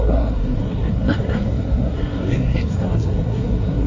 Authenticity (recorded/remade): remade